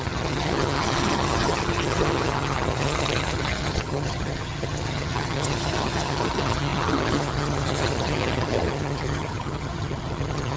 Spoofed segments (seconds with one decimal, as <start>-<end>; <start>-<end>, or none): 0.0-10.6